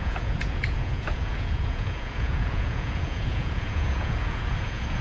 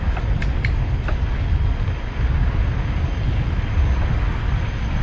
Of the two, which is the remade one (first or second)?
first